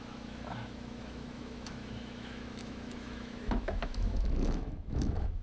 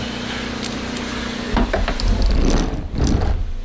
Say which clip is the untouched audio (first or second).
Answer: second